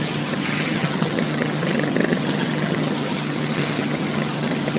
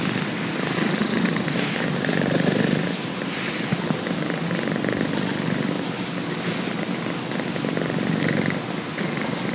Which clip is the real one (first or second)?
second